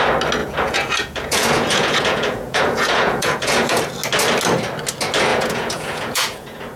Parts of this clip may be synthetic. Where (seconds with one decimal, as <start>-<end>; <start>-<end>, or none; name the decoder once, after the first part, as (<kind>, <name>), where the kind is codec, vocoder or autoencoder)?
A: 0.4-3.8 (vocoder, Vocos); 5.3-6.8